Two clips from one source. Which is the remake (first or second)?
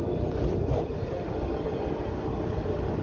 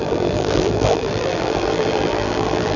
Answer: second